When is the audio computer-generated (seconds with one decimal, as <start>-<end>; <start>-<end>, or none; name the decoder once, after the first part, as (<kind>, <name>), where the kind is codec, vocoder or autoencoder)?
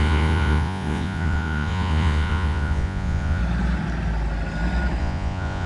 0.0-3.4 (vocoder, Vocos); 5.0-5.7